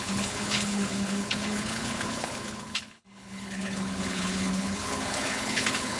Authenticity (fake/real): fake